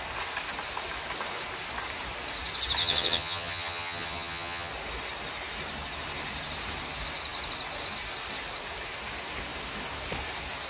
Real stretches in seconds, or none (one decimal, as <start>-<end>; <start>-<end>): 0.0-2.8; 4.7-10.7